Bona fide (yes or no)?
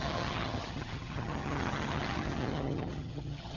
no